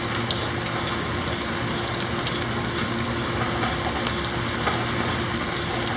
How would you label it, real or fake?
real